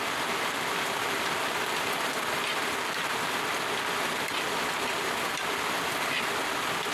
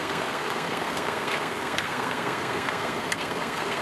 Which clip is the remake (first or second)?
second